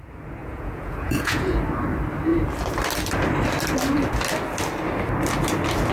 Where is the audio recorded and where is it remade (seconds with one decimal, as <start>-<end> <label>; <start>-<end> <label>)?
0.0-0.4 recorded; 0.4-1.6 remade; 1.6-5.9 recorded

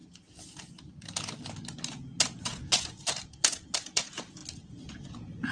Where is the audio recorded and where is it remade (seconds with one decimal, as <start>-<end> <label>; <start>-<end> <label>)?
0.0-2.4 recorded; 2.4-4.4 remade; 4.4-4.9 recorded; 4.9-5.5 remade

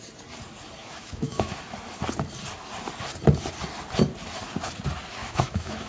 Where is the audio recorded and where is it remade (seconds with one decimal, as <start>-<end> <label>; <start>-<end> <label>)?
0.0-0.8 recorded; 0.8-1.6 remade; 1.6-5.2 recorded; 5.2-5.9 remade